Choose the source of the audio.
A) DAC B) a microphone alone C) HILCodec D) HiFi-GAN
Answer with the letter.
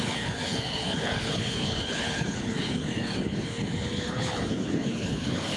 C